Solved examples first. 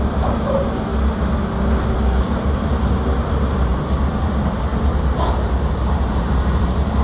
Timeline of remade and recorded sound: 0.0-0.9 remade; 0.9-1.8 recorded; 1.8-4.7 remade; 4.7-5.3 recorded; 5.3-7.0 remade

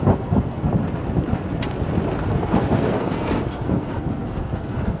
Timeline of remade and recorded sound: 0.0-0.7 remade; 0.7-2.3 recorded; 2.3-5.0 remade

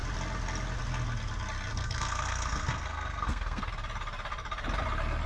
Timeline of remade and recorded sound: 0.0-1.7 recorded; 1.7-3.7 remade; 3.7-5.3 recorded

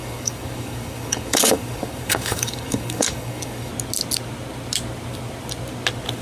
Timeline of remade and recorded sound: 0.0-3.7 remade; 3.7-6.2 recorded

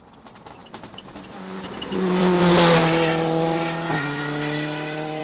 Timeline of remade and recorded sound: 0.0-0.6 recorded; 0.6-2.4 remade; 2.4-2.8 recorded; 2.8-5.2 remade

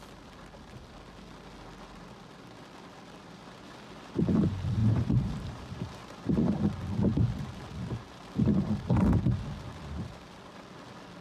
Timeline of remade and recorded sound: 0.0-4.8 recorded; 4.8-5.7 remade; 5.7-11.2 recorded

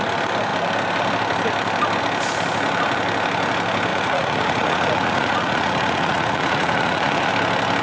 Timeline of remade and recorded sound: 0.0-3.9 recorded; 3.9-7.3 remade; 7.3-7.8 recorded

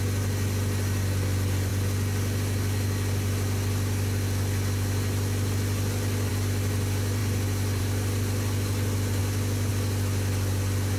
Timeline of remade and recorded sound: 0.0-11.0 recorded